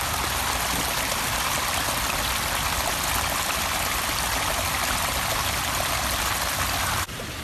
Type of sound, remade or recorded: recorded